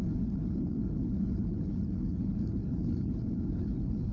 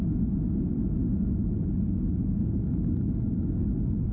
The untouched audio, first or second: second